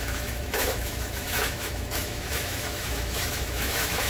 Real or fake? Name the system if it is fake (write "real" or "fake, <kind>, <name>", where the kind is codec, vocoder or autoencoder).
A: fake, autoencoder, DAC-VAE